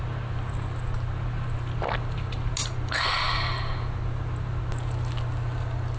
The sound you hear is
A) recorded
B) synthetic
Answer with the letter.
A